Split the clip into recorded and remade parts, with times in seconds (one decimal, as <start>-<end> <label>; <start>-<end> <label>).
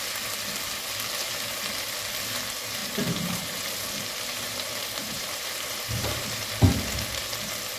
0.0-2.8 recorded; 2.8-3.6 remade; 3.6-5.0 recorded; 5.0-6.5 remade; 6.5-7.8 recorded